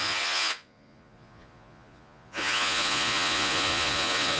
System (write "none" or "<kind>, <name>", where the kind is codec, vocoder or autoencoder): vocoder, Vocos